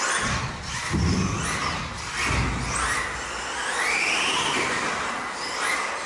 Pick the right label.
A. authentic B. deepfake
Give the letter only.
A